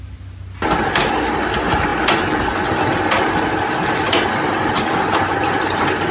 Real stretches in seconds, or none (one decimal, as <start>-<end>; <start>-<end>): 0.0-6.1